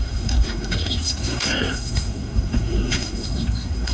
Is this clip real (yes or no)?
no